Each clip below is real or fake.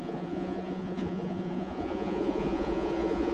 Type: fake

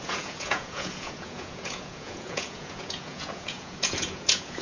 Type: fake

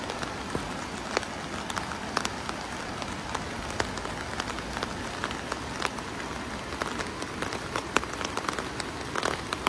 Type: real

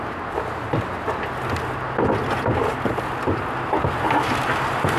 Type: real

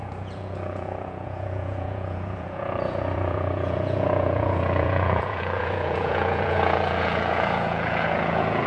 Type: fake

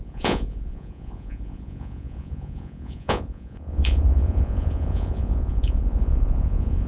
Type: fake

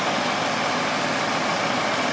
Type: real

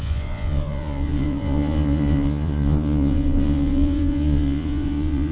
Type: fake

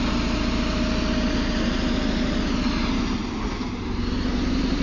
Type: real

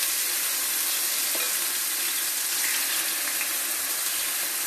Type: real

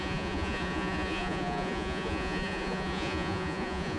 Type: fake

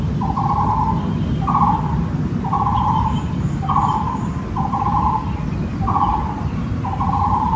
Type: real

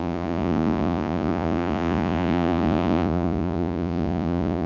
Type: fake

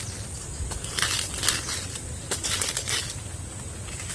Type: real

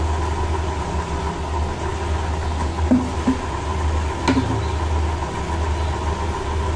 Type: real